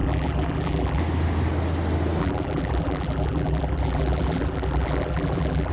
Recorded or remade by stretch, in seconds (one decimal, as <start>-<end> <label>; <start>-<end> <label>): 0.0-1.0 remade; 1.0-2.2 recorded; 2.2-5.7 remade